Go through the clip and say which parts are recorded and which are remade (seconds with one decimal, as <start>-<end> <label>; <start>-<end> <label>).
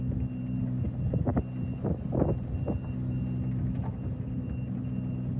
0.0-5.4 recorded